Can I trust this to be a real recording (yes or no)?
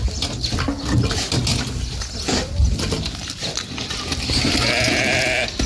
yes